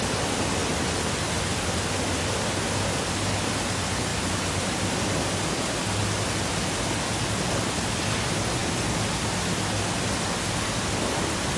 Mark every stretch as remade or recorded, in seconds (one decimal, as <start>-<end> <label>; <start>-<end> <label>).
0.0-11.6 recorded